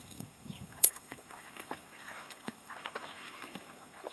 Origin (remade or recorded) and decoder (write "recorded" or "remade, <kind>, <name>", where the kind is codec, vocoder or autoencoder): remade, codec, SNAC